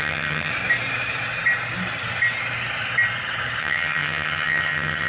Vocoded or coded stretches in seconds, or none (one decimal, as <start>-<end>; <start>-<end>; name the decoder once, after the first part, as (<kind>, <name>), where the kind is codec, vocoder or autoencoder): 0.0-0.5 (vocoder, HiFi-GAN); 3.6-5.1